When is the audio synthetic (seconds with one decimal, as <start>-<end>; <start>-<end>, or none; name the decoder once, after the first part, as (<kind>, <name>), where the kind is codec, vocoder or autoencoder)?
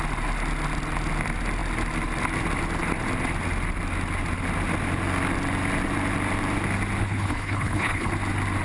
7.0-8.1 (codec, HILCodec)